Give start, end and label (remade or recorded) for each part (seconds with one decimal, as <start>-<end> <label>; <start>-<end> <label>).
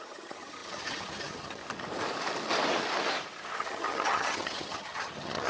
0.0-1.6 remade; 1.6-3.6 recorded; 3.6-5.5 remade